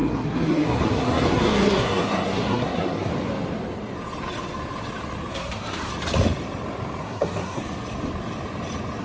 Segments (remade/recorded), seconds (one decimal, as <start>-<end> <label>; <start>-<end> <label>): 0.0-3.1 remade; 3.1-5.3 recorded; 5.3-5.9 remade; 5.9-7.0 recorded; 7.0-7.6 remade; 7.6-9.0 recorded